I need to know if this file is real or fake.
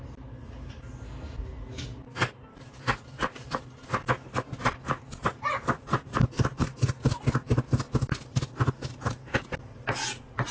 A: real